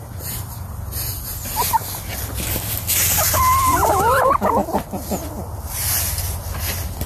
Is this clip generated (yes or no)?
no